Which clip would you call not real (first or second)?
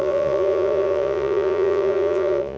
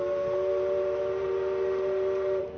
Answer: first